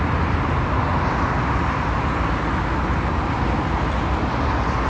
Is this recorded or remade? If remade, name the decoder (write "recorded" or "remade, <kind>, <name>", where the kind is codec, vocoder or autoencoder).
recorded